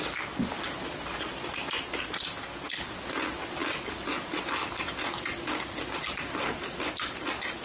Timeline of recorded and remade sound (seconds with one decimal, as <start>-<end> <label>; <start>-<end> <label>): 0.0-7.6 recorded